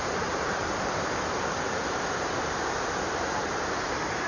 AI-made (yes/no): yes